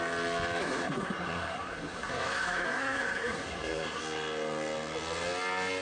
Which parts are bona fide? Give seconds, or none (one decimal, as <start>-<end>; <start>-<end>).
0.0-0.6; 4.0-5.8